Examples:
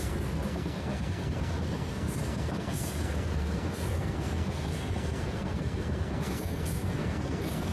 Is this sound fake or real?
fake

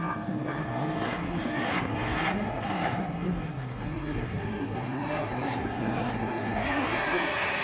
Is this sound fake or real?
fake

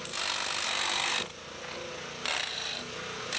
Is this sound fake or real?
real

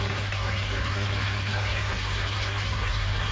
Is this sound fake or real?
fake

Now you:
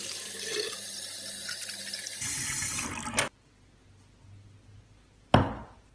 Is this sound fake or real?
real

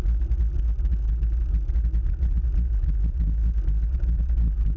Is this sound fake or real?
real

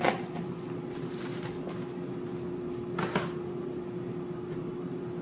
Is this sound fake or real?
real